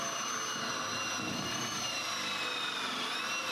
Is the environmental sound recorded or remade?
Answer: recorded